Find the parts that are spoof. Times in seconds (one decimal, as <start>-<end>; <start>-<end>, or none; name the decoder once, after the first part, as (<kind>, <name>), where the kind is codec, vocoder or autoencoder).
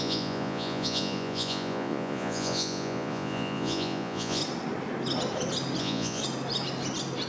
0.0-4.4 (vocoder, Vocos); 5.8-6.2